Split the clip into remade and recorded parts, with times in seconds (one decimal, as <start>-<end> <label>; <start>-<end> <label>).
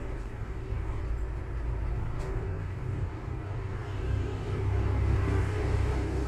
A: 0.0-1.0 remade; 1.0-1.9 recorded; 1.9-6.3 remade